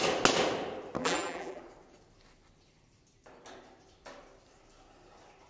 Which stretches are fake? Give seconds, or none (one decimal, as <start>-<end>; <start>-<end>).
1.0-1.6